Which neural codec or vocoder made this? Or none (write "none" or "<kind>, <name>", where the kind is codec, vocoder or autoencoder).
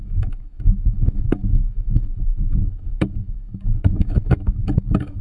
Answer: autoencoder, DAC-VAE